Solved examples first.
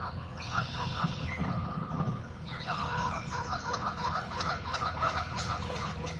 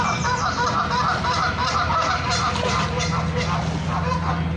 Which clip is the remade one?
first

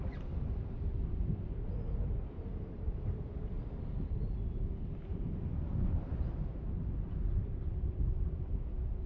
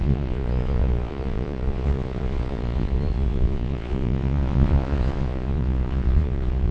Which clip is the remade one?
second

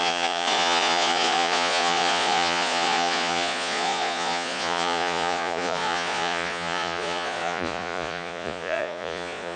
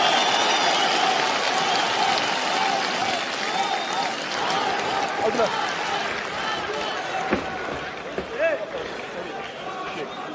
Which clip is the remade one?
first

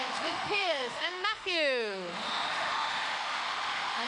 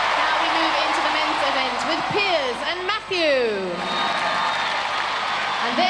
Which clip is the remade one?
first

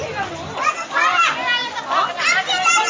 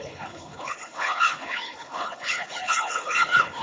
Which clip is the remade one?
second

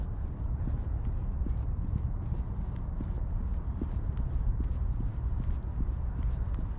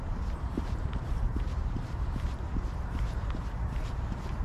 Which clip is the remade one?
second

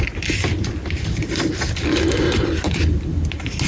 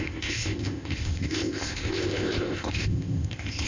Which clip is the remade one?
second